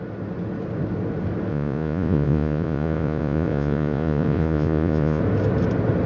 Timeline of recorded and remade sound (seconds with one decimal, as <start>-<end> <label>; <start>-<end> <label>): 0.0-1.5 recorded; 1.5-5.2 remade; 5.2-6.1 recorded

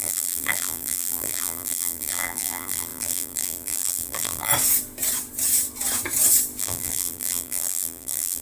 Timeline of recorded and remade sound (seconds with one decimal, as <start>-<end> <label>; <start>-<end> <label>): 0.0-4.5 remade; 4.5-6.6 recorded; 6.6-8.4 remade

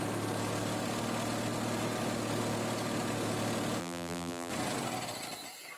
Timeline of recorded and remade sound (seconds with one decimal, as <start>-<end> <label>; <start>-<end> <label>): 0.0-3.8 recorded; 3.8-4.5 remade; 4.5-5.8 recorded